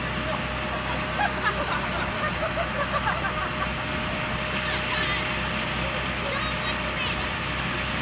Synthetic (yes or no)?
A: no